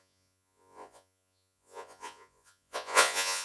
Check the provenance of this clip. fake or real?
fake